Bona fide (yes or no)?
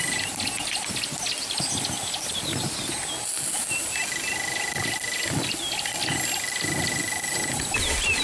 yes